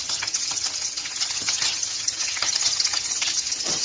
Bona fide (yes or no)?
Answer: no